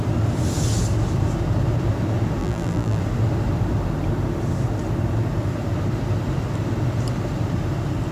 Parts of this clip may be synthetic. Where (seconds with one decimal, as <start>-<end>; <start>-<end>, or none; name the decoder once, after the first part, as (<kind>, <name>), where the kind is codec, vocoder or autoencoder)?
2.4-3.0 (vocoder, BigVGAN v2)